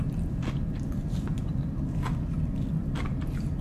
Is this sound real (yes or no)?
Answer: yes